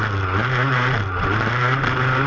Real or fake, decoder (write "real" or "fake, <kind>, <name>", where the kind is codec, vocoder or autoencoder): real